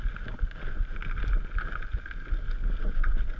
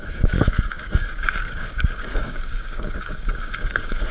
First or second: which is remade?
second